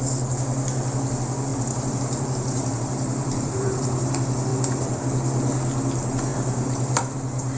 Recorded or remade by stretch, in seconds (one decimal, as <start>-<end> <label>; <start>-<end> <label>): 0.0-1.5 recorded; 1.5-4.1 remade; 4.1-6.3 recorded; 6.3-7.6 remade